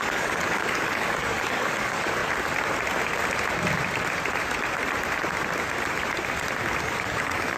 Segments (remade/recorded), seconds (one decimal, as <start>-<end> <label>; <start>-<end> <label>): 0.0-2.2 remade; 2.2-6.8 recorded; 6.8-7.6 remade